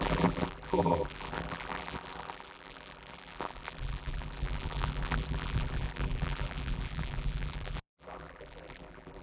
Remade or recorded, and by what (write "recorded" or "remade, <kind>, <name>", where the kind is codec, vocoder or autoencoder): remade, vocoder, BigVGAN v2